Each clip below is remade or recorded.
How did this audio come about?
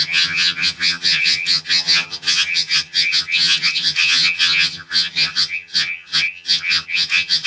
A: remade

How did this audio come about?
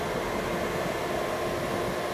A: recorded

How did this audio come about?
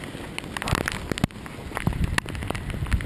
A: recorded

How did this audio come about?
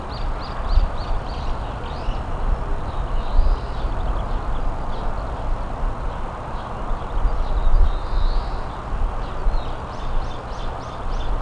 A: recorded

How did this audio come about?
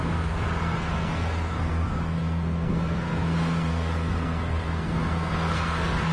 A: remade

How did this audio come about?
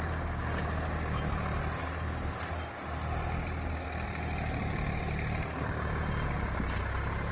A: recorded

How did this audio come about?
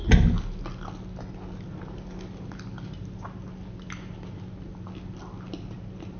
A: recorded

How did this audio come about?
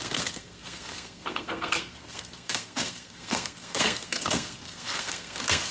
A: remade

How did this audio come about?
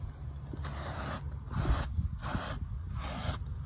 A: recorded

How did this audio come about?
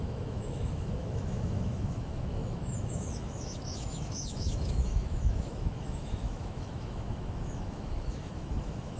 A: remade